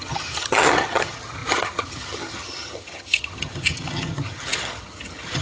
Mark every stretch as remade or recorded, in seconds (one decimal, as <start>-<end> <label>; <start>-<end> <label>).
0.0-5.4 remade